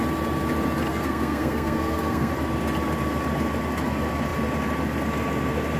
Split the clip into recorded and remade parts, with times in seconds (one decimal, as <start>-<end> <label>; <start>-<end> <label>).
0.0-0.9 recorded; 0.9-2.3 remade; 2.3-5.8 recorded